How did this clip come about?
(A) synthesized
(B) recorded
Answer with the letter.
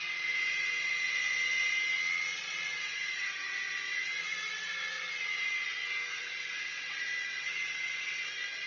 A